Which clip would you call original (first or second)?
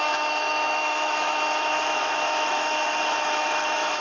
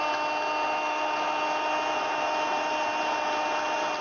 second